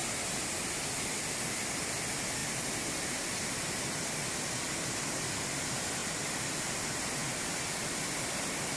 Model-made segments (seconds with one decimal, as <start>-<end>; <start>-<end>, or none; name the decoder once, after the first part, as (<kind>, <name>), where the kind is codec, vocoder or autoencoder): none